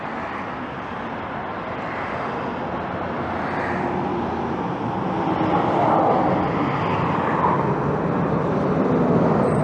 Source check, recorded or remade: recorded